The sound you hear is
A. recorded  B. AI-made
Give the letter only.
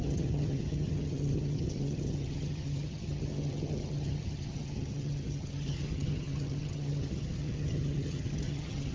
B